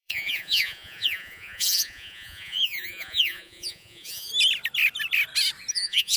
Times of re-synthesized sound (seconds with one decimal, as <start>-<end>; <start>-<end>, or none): 0.0-4.3; 5.7-6.2